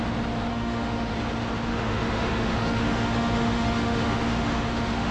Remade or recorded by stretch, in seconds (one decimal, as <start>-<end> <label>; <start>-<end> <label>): 0.0-0.5 recorded; 0.5-1.1 remade; 1.1-1.7 recorded; 1.7-5.1 remade